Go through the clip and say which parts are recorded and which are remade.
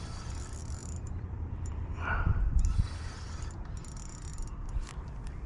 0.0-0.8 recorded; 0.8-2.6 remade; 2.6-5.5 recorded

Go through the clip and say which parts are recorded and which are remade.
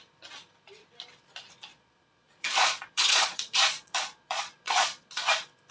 0.0-1.7 recorded; 1.7-5.1 remade; 5.1-5.7 recorded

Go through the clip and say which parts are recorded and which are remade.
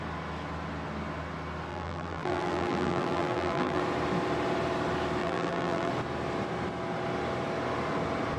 0.0-1.7 recorded; 1.7-3.8 remade; 3.8-5.2 recorded; 5.2-5.9 remade; 5.9-8.4 recorded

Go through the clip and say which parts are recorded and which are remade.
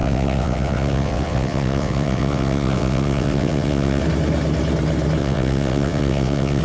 0.0-4.0 remade; 4.0-5.2 recorded; 5.2-6.6 remade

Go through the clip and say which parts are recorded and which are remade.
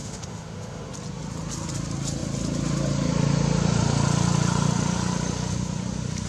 0.0-0.9 remade; 0.9-6.3 recorded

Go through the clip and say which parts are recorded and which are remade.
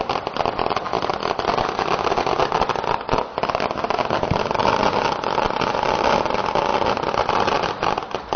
0.0-4.6 recorded; 4.6-5.2 remade; 5.2-8.4 recorded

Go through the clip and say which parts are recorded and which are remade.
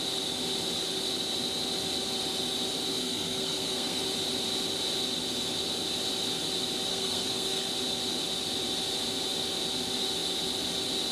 0.0-2.9 recorded; 2.9-4.0 remade; 4.0-6.9 recorded; 6.9-7.7 remade; 7.7-11.1 recorded